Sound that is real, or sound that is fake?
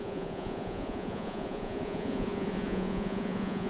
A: fake